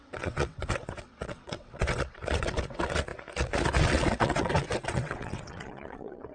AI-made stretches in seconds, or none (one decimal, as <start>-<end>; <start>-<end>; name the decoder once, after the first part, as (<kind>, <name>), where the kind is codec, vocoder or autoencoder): 0.0-3.1 (vocoder, WaveNeXt); 3.8-6.3